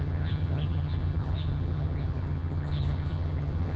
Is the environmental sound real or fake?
fake